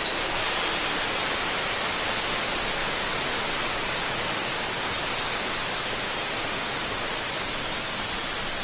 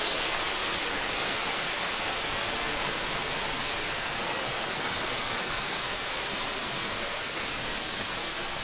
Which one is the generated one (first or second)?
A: second